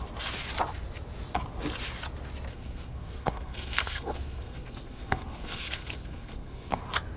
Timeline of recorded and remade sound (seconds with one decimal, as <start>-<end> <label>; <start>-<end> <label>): 0.0-2.5 recorded; 2.5-6.8 remade; 6.8-7.2 recorded